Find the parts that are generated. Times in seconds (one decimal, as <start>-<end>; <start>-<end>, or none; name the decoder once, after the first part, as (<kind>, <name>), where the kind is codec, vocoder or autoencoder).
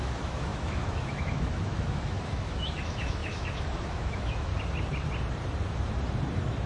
0.0-4.5 (autoencoder, DAC-VAE)